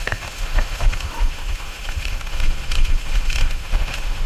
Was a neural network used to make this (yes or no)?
yes